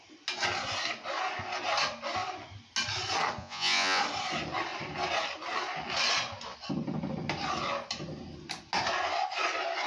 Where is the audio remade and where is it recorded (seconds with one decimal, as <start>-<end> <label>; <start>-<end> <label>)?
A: 0.0-3.4 recorded; 3.4-4.0 remade; 4.0-9.9 recorded